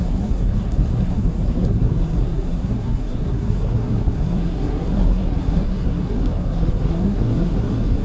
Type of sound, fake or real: fake